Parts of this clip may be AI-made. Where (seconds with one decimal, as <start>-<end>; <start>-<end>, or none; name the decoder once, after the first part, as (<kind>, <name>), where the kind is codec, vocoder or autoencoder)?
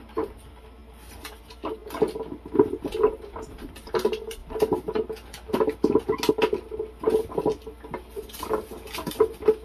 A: none